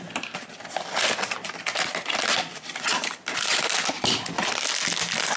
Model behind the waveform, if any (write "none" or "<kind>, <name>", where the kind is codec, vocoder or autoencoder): none